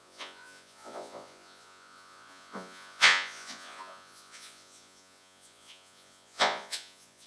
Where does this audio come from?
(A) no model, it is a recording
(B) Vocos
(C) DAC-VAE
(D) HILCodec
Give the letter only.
B